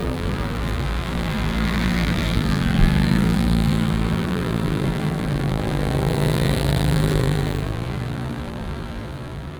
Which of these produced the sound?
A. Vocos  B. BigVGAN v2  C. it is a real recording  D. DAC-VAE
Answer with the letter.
B